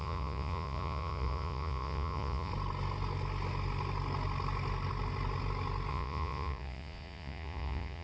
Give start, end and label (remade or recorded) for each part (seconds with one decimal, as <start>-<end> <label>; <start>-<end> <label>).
0.0-2.5 remade; 2.5-5.9 recorded; 5.9-8.0 remade